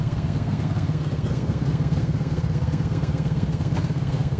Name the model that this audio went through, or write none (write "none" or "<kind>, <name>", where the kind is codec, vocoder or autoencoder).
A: codec, SNAC